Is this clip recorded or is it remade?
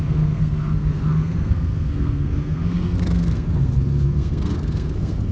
remade